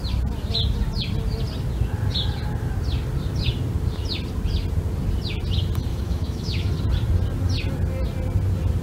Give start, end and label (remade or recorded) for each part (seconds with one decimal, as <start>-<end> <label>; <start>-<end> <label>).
0.0-5.9 recorded; 5.9-6.7 remade; 6.7-8.8 recorded